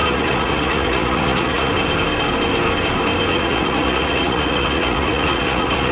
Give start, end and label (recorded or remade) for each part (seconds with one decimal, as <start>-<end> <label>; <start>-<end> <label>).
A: 0.0-1.7 remade; 1.7-3.3 recorded; 3.3-5.9 remade